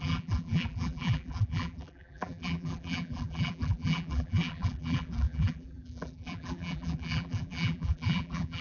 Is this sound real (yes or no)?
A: no